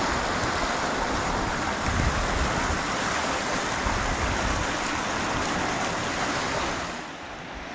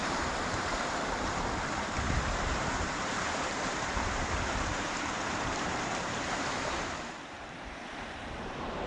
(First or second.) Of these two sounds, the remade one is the second